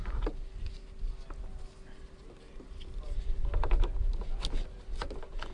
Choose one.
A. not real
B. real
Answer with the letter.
B